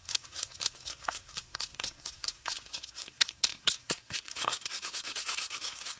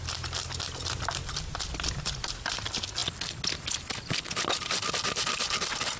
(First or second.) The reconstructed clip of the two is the first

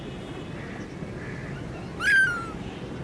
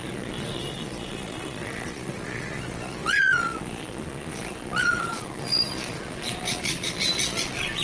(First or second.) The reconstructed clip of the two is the second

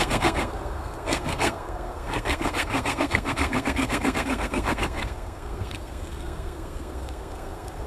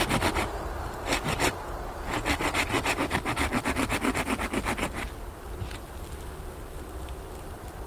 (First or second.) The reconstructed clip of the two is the first